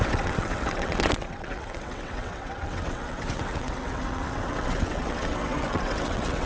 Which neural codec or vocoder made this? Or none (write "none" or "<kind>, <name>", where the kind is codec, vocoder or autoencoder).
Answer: vocoder, WaveNeXt